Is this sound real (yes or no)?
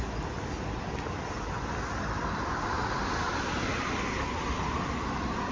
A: yes